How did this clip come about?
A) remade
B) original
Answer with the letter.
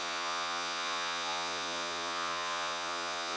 A